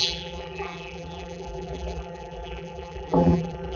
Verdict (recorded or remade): remade